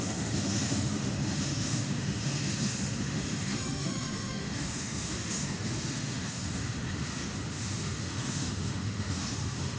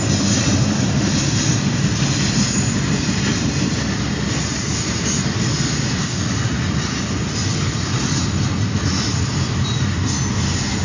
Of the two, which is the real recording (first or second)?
second